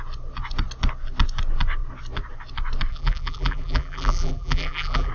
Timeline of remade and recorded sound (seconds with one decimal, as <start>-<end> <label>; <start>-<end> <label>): 0.0-2.9 recorded; 2.9-5.1 remade